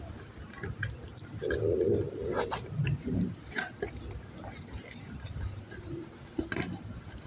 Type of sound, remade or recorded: recorded